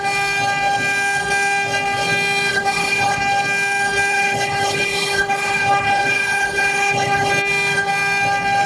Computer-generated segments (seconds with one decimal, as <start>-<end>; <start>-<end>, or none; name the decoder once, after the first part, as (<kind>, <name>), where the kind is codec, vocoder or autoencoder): 2.5-3.2 (codec, HILCodec); 4.1-7.3